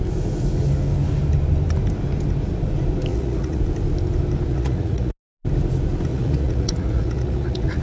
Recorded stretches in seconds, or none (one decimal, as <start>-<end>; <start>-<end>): 0.0-3.1; 3.6-4.5; 5.1-6.1